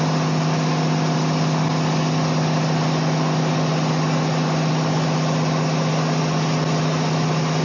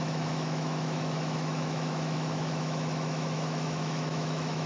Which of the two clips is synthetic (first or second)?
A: second